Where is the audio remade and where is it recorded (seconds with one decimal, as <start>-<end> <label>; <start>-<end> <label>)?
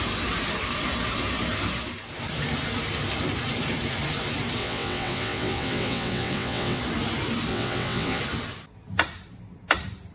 0.0-4.6 recorded; 4.6-6.8 remade; 6.8-7.5 recorded; 7.5-8.2 remade; 8.2-10.1 recorded